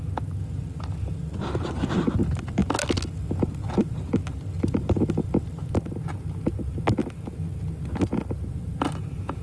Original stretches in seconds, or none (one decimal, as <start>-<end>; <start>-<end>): 0.0-9.4